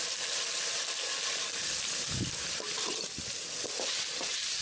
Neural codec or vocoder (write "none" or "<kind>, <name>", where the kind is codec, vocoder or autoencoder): none